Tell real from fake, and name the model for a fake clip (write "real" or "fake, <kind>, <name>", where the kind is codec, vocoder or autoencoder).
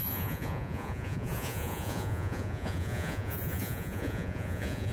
fake, vocoder, Vocos